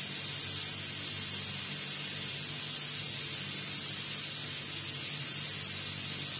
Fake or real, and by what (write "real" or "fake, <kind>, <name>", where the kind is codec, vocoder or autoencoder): real